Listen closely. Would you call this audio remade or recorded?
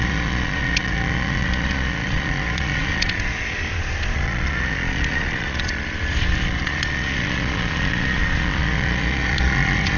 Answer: remade